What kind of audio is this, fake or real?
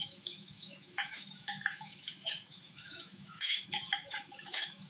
fake